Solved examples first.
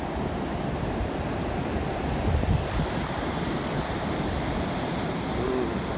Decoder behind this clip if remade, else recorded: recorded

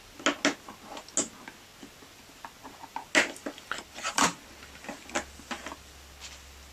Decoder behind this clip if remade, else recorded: recorded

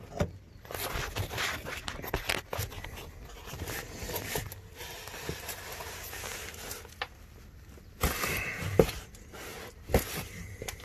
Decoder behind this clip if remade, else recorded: recorded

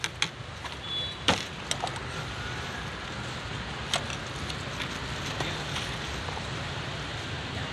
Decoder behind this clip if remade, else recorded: recorded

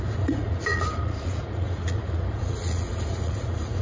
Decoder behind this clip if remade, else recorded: remade, vocoder, Vocos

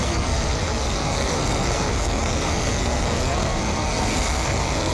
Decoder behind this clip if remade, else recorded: remade, codec, SNAC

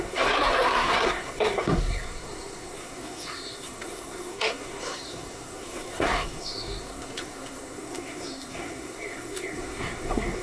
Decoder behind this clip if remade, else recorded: remade, codec, SNAC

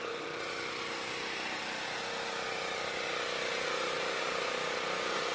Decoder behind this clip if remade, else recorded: recorded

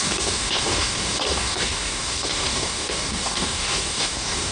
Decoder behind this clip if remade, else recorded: remade, codec, DAC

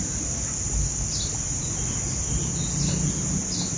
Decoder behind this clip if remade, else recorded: recorded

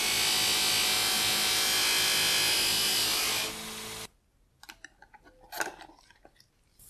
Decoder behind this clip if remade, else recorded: recorded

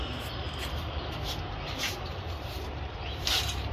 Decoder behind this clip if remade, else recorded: remade, vocoder, BigVGAN v2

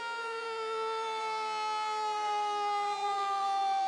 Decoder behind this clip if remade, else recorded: remade, vocoder, BigVGAN v2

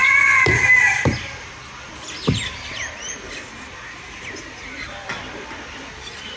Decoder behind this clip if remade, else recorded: recorded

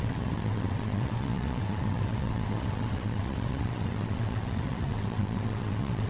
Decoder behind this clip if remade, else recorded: remade, vocoder, WaveNeXt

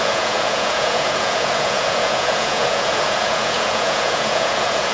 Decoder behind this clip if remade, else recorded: remade, vocoder, Vocos